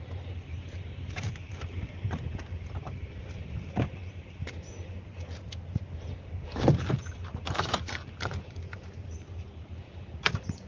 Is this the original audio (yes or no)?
no